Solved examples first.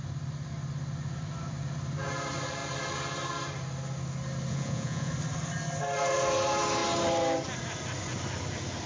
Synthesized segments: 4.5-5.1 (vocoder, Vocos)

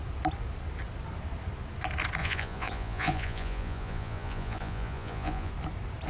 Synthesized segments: 2.2-5.5 (vocoder, Vocos)